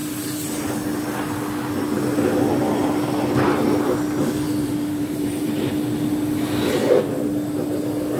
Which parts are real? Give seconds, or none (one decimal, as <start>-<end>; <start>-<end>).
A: 0.0-4.6; 5.7-8.2